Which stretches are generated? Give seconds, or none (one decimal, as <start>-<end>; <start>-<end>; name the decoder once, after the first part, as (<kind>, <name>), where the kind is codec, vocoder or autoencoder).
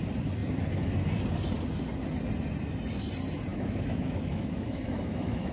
3.5-5.5 (autoencoder, DAC-VAE)